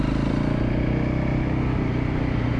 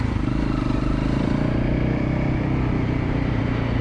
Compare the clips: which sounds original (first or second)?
first